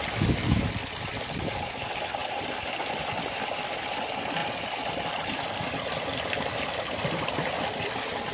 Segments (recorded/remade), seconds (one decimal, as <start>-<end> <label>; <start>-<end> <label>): 0.0-2.2 recorded; 2.2-3.6 remade; 3.6-4.4 recorded; 4.4-5.7 remade; 5.7-8.3 recorded